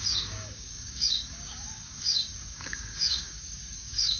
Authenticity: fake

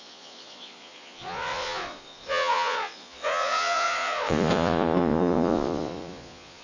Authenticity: fake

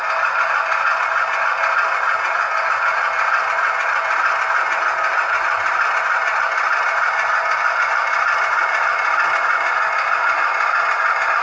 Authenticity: real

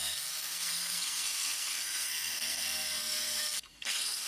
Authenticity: fake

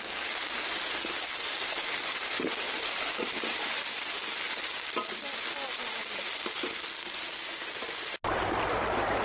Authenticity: real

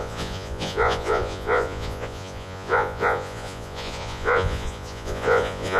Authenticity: fake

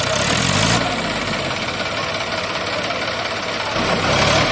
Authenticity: real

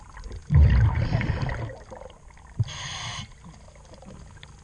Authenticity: real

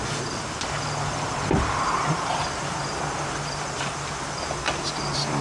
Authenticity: real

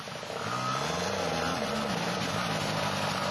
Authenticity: real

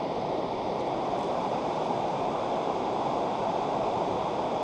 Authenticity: fake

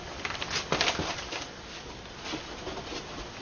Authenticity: real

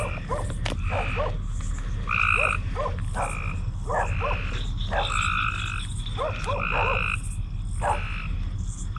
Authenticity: real